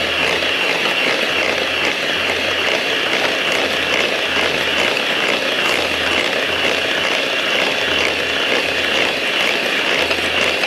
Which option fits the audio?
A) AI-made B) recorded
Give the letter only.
B